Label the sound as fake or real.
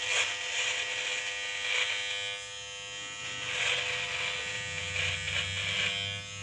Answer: real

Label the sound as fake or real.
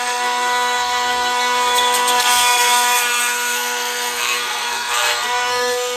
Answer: fake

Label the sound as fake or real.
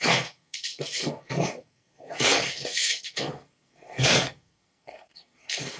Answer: fake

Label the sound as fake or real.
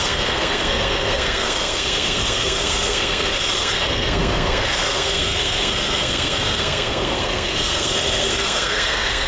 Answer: fake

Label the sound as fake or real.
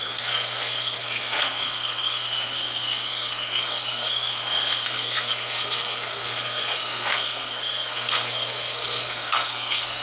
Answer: fake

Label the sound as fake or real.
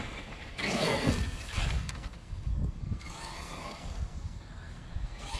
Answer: fake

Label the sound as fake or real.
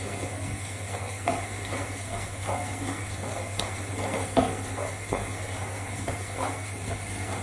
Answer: fake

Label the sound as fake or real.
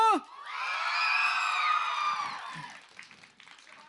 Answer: real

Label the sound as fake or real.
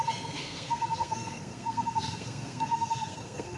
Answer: fake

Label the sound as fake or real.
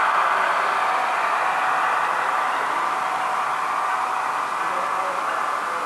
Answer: real